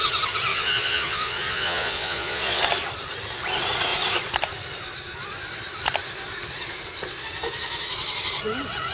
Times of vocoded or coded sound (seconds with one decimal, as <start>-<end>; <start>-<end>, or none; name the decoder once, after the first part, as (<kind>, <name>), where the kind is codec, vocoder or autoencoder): 0.5-2.6 (vocoder, Vocos)